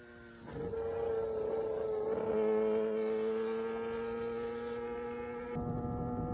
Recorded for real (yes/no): yes